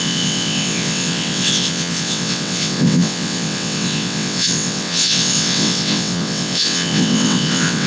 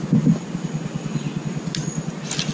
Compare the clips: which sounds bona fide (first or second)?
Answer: second